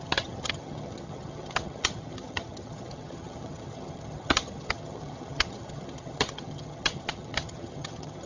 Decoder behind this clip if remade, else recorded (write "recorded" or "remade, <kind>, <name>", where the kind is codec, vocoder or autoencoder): remade, vocoder, HiFi-GAN